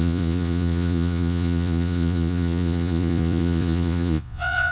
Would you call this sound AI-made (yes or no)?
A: yes